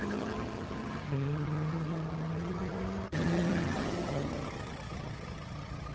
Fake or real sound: fake